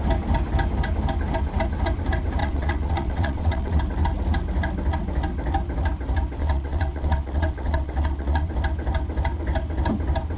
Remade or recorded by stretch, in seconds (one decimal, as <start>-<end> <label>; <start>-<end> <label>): 0.0-2.4 recorded; 2.4-3.8 remade; 3.8-6.4 recorded; 6.4-8.5 remade; 8.5-10.4 recorded